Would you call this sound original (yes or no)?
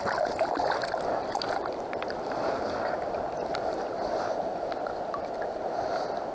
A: yes